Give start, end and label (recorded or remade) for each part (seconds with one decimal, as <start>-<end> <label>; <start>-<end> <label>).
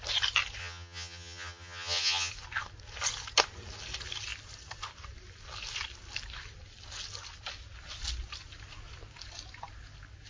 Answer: 0.0-0.6 recorded; 0.6-2.3 remade; 2.3-10.3 recorded